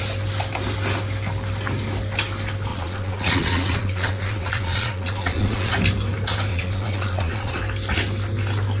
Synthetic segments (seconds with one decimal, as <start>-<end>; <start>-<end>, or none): 2.7-5.7; 6.5-7.6

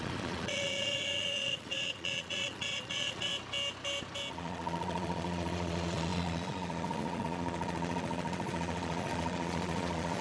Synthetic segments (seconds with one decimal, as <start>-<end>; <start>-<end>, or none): 0.0-3.3; 4.3-10.2

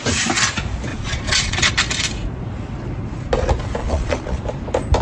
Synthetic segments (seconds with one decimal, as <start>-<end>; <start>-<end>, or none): 0.9-1.7; 3.8-4.4

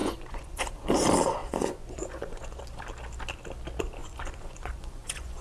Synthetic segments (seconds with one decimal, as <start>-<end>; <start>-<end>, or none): 0.0-0.7; 1.4-2.6; 4.0-5.4

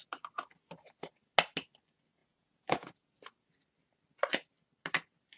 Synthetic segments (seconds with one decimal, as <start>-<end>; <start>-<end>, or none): 2.2-3.1

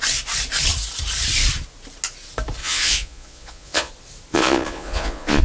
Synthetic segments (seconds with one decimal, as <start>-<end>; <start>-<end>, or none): 2.6-3.9; 4.3-5.4

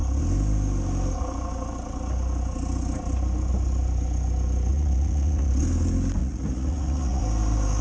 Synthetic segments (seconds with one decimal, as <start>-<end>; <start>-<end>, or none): 4.7-5.5; 6.2-7.2